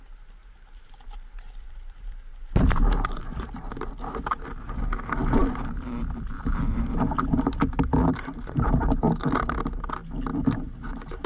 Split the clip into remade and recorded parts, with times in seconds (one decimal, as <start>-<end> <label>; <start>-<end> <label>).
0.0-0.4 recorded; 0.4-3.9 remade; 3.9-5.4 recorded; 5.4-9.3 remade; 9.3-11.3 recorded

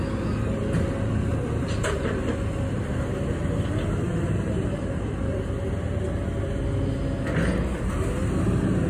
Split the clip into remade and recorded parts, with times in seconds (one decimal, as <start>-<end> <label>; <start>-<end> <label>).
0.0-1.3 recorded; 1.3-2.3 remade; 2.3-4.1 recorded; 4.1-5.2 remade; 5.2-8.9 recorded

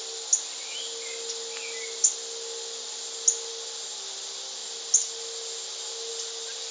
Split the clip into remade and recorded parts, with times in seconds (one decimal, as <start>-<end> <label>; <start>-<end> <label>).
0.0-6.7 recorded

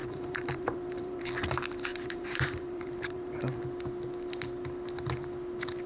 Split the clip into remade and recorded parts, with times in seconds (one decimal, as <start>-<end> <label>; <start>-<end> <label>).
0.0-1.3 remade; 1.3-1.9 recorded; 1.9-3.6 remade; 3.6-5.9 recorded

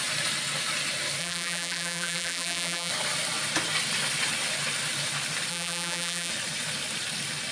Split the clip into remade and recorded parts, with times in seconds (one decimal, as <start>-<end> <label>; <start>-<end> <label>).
0.0-1.2 recorded; 1.2-2.9 remade; 2.9-5.5 recorded; 5.5-6.3 remade; 6.3-7.5 recorded

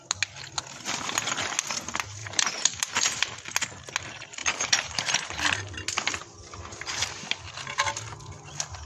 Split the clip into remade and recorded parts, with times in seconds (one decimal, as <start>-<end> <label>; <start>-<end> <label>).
0.0-2.2 recorded; 2.2-3.4 remade; 3.4-4.4 recorded; 4.4-5.4 remade; 5.4-6.2 recorded; 6.2-7.0 remade; 7.0-8.9 recorded